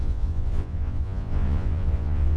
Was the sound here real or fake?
fake